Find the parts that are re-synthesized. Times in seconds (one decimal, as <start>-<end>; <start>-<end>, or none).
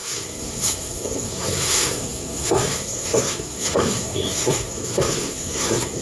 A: 0.0-6.0